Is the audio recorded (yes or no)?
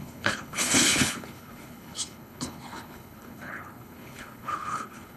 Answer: no